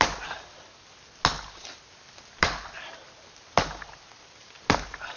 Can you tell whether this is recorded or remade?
recorded